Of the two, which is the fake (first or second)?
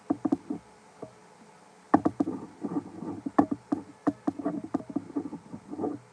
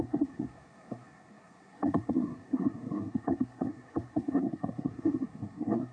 second